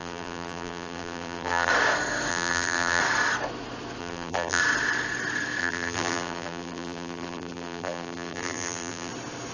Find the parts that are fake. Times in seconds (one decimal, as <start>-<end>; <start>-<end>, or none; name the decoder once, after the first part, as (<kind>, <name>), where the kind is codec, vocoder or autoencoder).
0.0-1.7 (vocoder, BigVGAN v2); 2.3-3.0; 4.0-4.6; 5.6-9.1